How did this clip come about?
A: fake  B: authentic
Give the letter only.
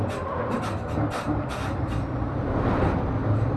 B